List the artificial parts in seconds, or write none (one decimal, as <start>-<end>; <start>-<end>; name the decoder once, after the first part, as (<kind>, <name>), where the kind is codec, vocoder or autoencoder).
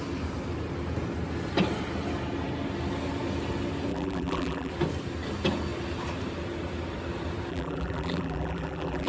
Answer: 3.9-4.7 (vocoder, BigVGAN v2); 7.5-9.1